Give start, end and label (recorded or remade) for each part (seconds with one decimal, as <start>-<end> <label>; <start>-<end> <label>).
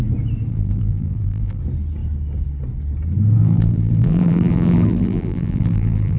0.0-0.5 recorded; 0.5-1.6 remade; 1.6-3.4 recorded; 3.4-6.2 remade